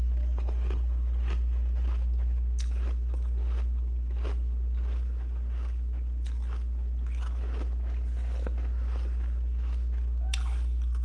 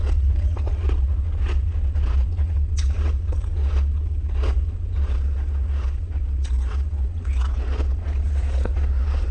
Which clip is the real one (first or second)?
first